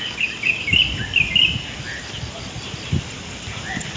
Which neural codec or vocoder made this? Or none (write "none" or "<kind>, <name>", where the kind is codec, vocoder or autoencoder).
none